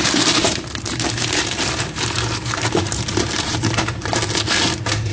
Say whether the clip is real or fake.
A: fake